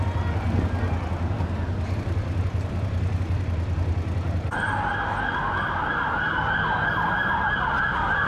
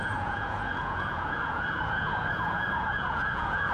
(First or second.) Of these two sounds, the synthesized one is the second